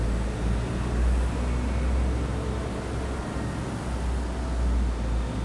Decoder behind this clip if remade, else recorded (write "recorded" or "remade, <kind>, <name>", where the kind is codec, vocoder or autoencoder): recorded